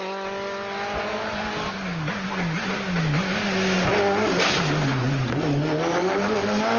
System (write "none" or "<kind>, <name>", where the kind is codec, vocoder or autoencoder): none